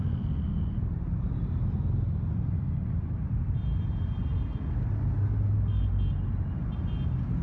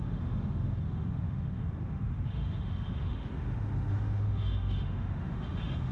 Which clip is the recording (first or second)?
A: first